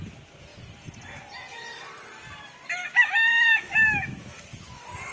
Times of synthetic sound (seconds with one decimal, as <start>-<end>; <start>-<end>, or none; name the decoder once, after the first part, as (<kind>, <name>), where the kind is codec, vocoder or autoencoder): 2.8-4.4 (autoencoder, DAC-VAE)

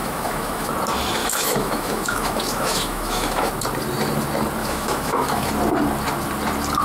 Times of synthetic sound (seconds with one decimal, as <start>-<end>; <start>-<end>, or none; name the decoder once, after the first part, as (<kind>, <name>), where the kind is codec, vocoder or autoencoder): 0.0-0.7 (autoencoder, DAC-VAE); 1.2-3.5; 4.6-5.5

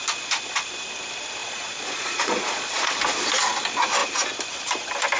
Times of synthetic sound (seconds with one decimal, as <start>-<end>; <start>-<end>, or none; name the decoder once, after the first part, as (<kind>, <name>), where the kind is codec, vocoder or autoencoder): 1.4-2.9 (vocoder, Vocos)

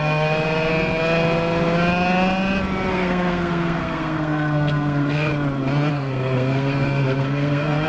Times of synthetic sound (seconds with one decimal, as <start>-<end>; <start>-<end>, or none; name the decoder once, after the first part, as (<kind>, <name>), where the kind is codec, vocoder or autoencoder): 0.0-0.7 (codec, SNAC); 2.9-5.3; 5.9-7.9